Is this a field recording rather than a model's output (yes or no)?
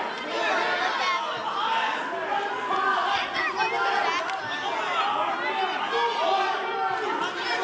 yes